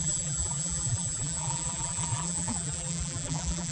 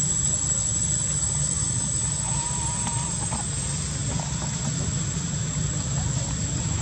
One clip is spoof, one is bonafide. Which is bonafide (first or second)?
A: second